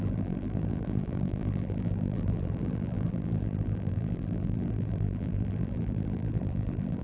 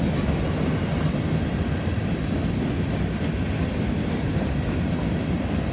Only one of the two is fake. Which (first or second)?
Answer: first